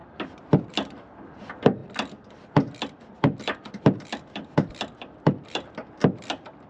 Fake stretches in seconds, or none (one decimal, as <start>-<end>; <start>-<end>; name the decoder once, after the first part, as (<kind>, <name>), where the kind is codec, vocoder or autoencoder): 0.7-1.8 (vocoder, BigVGAN v2); 2.3-5.8